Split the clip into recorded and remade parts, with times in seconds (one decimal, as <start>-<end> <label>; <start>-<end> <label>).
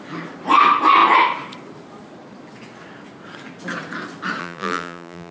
0.0-4.4 recorded; 4.4-5.3 remade